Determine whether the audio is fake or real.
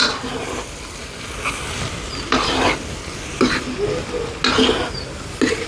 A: real